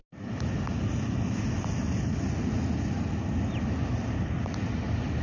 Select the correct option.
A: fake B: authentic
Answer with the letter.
B